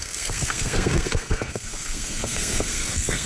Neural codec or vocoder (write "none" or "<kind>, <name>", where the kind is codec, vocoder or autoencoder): codec, SNAC